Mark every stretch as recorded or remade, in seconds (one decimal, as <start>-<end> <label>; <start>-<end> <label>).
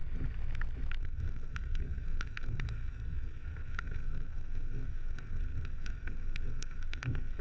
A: 0.0-1.0 recorded; 1.0-7.4 remade